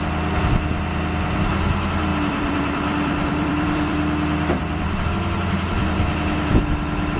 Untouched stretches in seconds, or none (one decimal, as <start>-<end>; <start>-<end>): 0.0-2.1; 5.1-5.7; 6.6-7.2